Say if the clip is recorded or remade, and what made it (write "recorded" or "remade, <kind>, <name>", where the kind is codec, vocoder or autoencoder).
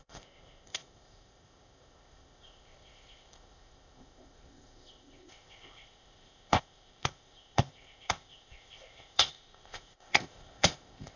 remade, codec, ZipCodec